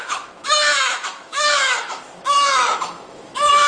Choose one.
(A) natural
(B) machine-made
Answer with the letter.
B